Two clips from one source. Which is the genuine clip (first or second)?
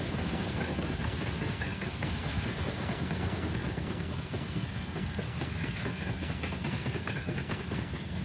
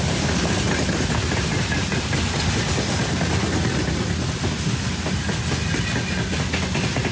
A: second